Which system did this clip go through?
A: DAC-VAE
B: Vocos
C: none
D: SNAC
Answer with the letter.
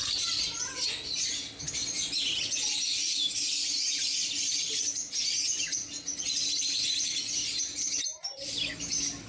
C